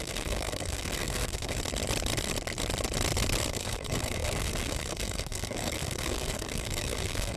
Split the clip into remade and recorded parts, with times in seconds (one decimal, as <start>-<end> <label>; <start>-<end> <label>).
0.0-1.6 remade; 1.6-3.5 recorded; 3.5-7.4 remade

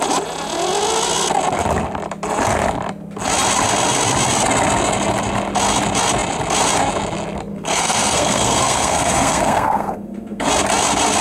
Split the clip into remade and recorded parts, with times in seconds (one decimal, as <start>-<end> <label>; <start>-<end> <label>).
0.0-7.5 recorded; 7.5-10.5 remade; 10.5-11.2 recorded

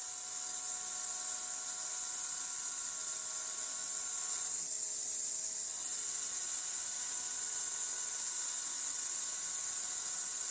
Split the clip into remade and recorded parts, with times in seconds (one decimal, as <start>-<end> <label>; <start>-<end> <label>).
0.0-10.5 recorded